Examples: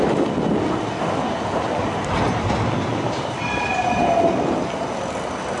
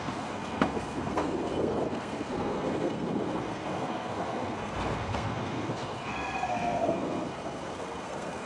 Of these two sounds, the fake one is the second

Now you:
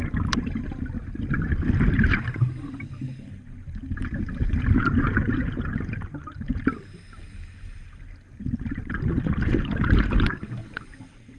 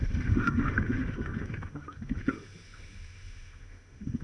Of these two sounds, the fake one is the second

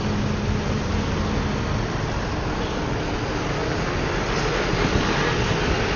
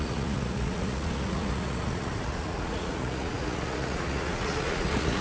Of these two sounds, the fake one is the second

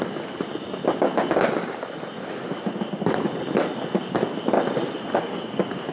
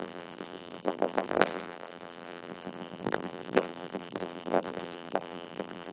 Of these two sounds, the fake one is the second